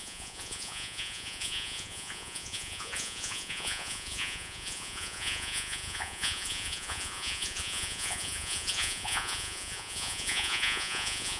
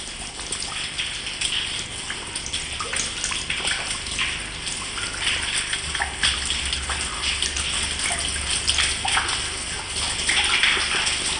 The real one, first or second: second